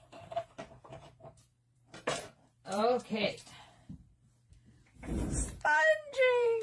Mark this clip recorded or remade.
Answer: remade